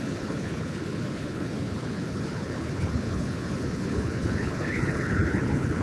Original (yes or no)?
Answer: no